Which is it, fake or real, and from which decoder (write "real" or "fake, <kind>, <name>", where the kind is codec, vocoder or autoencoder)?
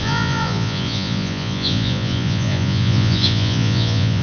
fake, vocoder, Vocos